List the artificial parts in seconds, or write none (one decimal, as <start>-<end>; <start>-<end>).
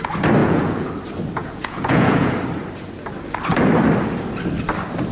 0.4-0.9; 1.4-2.3